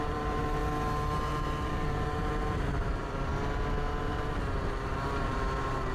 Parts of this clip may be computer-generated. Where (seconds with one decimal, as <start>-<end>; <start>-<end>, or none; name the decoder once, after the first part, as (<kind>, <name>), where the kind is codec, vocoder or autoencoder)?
0.0-0.6 (vocoder, BigVGAN v2); 1.3-3.3; 4.1-5.9